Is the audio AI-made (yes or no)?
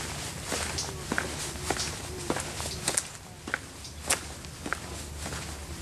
no